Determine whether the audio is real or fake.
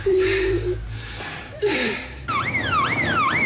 real